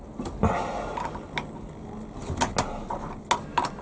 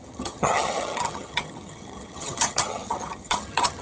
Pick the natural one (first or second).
first